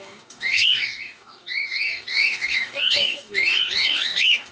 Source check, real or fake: fake